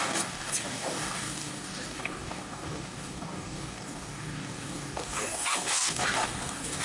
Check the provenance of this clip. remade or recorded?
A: remade